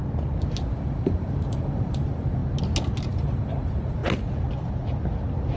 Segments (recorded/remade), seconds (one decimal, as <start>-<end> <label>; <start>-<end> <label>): 0.0-0.6 recorded; 0.6-2.4 remade; 2.4-3.1 recorded; 3.1-4.0 remade; 4.0-5.6 recorded